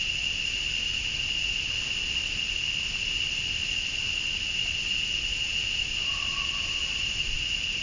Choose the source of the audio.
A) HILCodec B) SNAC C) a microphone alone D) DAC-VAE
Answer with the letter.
C